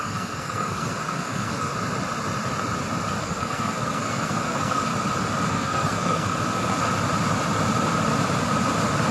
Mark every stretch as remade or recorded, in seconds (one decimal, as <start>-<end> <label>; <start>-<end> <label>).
0.0-1.7 remade; 1.7-3.2 recorded; 3.2-4.9 remade; 4.9-5.5 recorded; 5.5-6.9 remade; 6.9-9.1 recorded